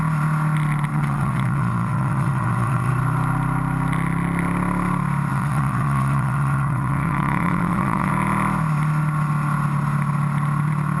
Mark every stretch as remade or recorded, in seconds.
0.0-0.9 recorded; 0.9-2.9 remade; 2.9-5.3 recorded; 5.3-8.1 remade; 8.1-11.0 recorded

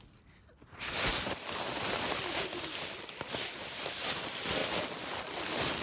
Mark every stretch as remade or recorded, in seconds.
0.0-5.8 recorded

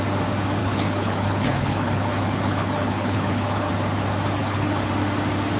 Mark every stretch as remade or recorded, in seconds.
0.0-0.6 recorded; 0.6-3.7 remade; 3.7-4.4 recorded; 4.4-4.9 remade; 4.9-5.6 recorded

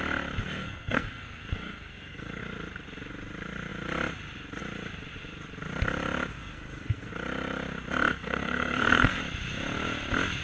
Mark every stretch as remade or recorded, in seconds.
0.0-0.4 recorded; 0.4-2.4 remade; 2.4-6.3 recorded; 6.3-7.1 remade; 7.1-8.1 recorded; 8.1-9.2 remade; 9.2-10.4 recorded